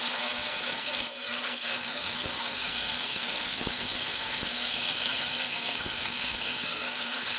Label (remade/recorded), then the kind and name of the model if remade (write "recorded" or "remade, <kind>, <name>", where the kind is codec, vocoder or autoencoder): remade, codec, SNAC